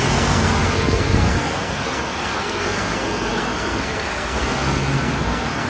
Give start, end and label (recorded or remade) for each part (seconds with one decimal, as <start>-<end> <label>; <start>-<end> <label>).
0.0-5.7 remade